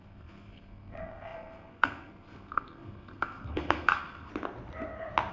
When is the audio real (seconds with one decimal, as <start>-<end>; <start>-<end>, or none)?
4.3-5.3